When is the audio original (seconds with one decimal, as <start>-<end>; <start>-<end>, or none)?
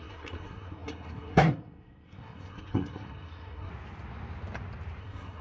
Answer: 3.7-5.0